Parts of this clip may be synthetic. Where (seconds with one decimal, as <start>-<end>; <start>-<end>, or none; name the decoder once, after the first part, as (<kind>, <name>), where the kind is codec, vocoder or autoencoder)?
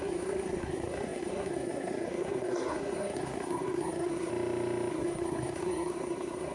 0.0-4.3 (codec, SNAC); 4.9-6.5